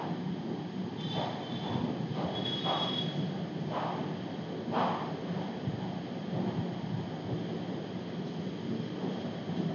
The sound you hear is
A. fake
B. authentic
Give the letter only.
B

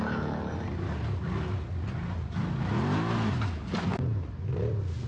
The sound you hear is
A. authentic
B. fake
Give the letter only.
A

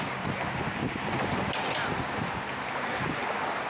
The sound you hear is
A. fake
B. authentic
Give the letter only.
B